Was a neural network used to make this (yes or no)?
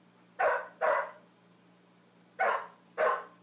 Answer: no